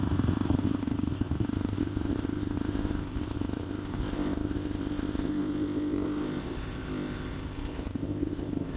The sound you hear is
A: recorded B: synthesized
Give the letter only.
B